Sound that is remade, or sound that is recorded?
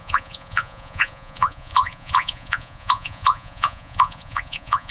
remade